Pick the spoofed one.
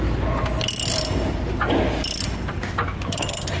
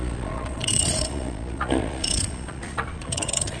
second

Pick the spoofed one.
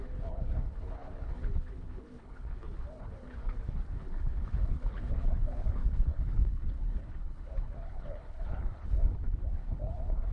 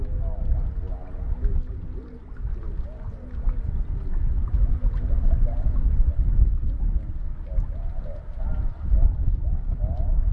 first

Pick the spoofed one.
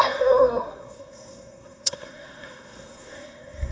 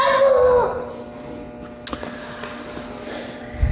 first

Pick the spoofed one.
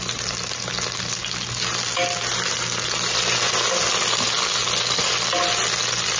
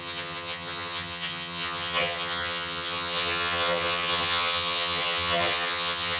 second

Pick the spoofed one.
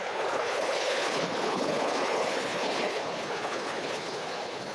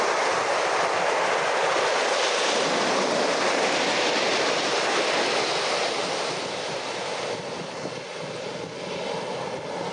first